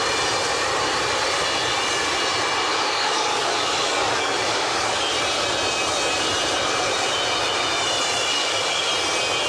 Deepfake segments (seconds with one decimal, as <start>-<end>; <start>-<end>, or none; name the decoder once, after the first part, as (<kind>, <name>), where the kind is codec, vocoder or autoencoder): 2.7-5.1 (codec, DAC); 8.3-8.9